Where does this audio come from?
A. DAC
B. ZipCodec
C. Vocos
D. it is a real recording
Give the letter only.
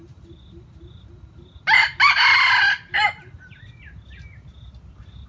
D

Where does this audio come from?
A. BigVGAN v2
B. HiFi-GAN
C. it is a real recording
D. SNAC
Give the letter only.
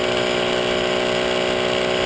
C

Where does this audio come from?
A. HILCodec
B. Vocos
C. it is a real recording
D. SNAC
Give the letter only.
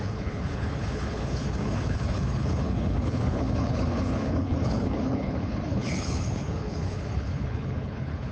A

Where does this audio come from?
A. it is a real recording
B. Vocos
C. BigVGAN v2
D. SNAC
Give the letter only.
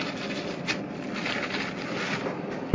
A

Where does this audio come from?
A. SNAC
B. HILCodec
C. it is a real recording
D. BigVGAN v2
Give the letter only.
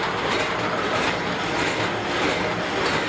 C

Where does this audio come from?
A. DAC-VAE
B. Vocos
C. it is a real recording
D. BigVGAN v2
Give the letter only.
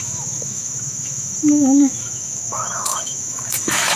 A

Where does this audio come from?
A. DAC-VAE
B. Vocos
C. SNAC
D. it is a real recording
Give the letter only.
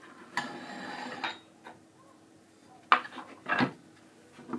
D